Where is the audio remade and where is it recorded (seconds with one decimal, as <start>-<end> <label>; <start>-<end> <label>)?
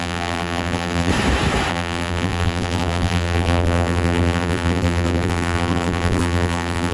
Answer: 0.0-1.1 remade; 1.1-1.7 recorded; 1.7-6.9 remade